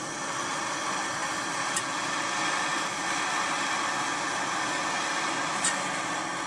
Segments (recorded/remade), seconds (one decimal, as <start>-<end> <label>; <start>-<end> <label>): 0.0-6.5 recorded